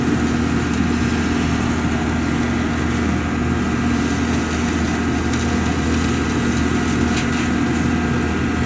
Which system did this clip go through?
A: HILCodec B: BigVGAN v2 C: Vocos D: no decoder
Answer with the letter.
D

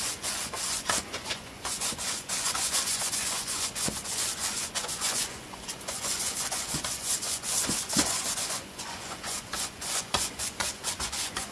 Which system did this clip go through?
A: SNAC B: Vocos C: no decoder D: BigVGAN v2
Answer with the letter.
B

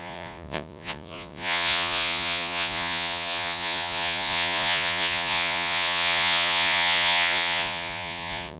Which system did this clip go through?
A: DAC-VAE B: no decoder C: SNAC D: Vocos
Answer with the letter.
D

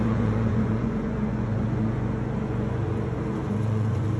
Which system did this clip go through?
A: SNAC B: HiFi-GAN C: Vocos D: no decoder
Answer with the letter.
C